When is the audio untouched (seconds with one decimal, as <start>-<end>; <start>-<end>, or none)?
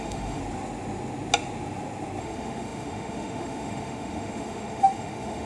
0.4-2.2